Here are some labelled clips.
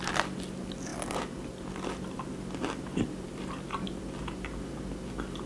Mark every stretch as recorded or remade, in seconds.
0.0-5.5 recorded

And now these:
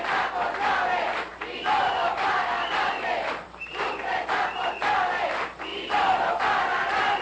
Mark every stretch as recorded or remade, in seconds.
0.0-1.3 recorded; 1.3-4.3 remade; 4.3-5.7 recorded; 5.7-6.3 remade; 6.3-7.2 recorded

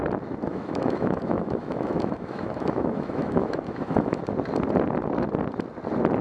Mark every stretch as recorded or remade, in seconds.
0.0-0.5 recorded; 0.5-4.2 remade; 4.2-6.2 recorded

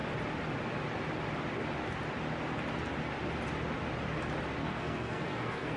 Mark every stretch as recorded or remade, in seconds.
0.0-4.6 recorded; 4.6-5.8 remade

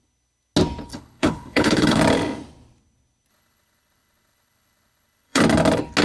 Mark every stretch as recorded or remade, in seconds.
0.0-0.9 recorded; 0.9-2.0 remade; 2.0-3.3 recorded; 3.3-5.4 remade; 5.4-6.0 recorded